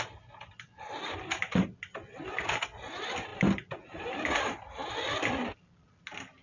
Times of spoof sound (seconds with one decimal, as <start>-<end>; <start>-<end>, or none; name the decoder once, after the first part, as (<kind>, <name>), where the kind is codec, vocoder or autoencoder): none